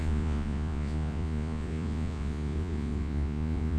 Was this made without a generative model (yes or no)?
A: no